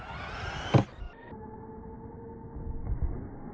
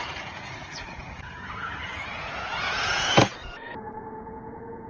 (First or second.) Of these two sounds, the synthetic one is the second